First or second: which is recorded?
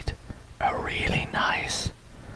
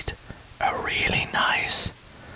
second